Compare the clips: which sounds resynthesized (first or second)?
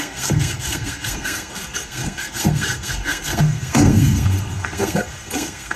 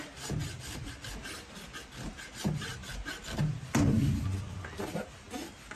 first